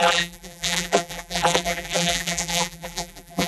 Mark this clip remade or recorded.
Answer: remade